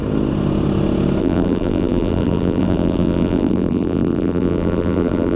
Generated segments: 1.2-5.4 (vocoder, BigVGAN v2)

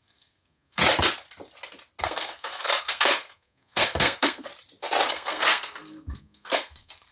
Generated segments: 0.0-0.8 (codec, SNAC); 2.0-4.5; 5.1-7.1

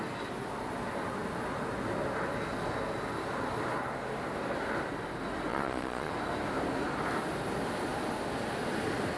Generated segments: 5.5-6.1 (vocoder, Vocos)

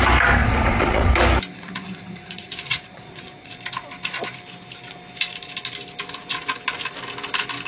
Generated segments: 0.4-1.1 (vocoder, Vocos); 1.5-3.5

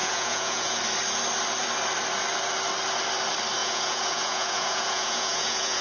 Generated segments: 0.0-0.8 (vocoder, Vocos); 3.6-5.8

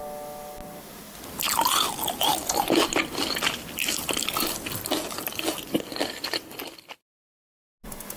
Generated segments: none

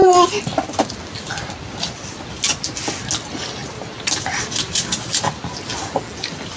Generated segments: 0.0-0.9 (vocoder, BigVGAN v2)